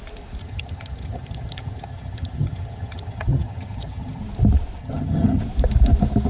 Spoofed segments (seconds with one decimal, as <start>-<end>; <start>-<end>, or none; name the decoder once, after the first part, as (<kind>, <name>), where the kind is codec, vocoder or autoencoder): 0.4-4.2 (vocoder, HiFi-GAN); 4.8-5.4